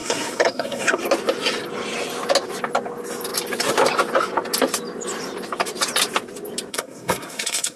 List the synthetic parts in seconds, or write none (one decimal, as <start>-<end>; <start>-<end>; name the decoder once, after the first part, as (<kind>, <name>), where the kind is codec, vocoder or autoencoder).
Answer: 0.0-1.0 (codec, SNAC); 6.7-7.8